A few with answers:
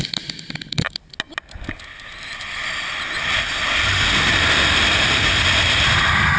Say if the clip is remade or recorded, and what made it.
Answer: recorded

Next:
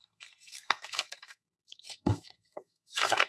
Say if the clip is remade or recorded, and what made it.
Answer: remade, codec, SNAC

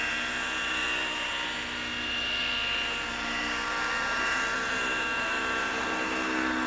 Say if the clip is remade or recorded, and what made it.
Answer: recorded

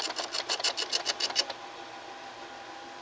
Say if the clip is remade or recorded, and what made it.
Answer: recorded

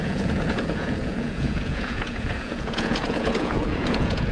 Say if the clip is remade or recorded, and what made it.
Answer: remade, vocoder, Vocos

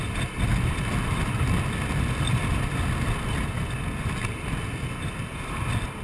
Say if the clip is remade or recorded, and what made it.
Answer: recorded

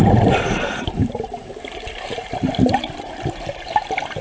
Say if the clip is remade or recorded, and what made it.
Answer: remade, vocoder, BigVGAN v2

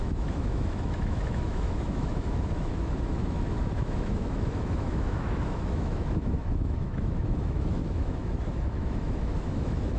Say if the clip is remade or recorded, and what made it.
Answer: remade, autoencoder, DAC-VAE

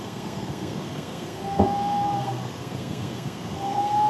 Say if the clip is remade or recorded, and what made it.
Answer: remade, codec, SNAC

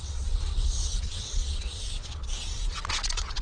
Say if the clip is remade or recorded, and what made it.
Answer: remade, vocoder, WaveNeXt